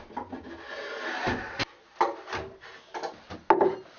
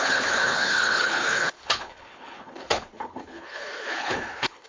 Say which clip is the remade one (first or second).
second